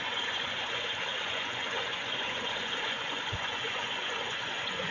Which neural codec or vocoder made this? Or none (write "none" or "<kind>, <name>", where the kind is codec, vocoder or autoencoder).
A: vocoder, Vocos